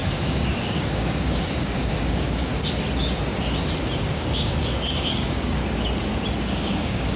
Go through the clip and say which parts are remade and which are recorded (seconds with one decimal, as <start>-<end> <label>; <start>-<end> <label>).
0.0-2.5 remade; 2.5-4.0 recorded; 4.0-5.6 remade; 5.6-6.4 recorded; 6.4-7.2 remade